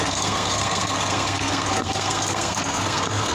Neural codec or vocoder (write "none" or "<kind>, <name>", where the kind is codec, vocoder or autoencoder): codec, SNAC